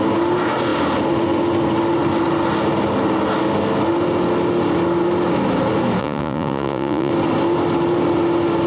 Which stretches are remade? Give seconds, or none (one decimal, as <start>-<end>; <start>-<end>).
6.0-7.1